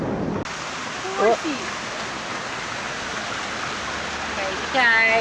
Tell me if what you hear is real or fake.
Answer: real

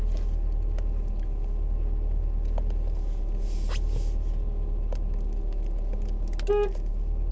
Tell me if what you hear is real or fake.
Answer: real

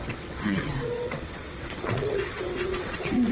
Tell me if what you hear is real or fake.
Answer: fake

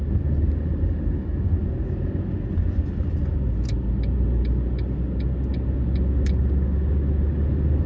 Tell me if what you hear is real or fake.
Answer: real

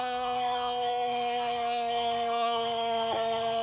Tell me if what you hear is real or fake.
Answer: fake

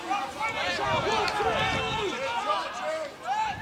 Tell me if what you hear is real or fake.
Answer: real